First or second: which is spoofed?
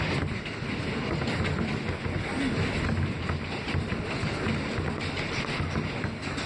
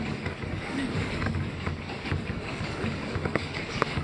second